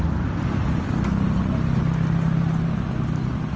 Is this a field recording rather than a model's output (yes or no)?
yes